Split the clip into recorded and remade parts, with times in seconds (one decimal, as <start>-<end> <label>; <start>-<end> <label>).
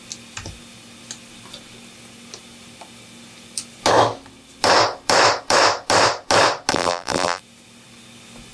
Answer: 0.0-6.7 recorded; 6.7-7.4 remade; 7.4-8.5 recorded